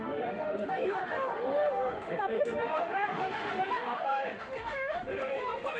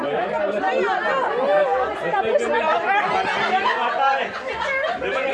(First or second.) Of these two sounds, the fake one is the first